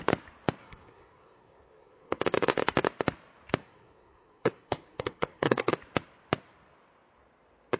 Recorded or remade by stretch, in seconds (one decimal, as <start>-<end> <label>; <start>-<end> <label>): 0.0-0.6 recorded; 0.6-2.2 remade; 2.2-3.6 recorded; 3.6-5.7 remade; 5.7-7.8 recorded